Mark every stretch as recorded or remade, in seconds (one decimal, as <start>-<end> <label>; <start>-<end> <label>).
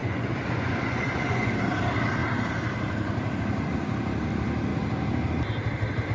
0.0-1.5 remade; 1.5-6.1 recorded